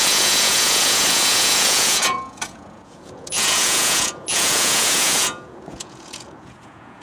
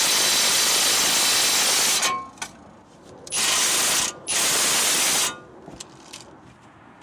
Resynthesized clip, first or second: first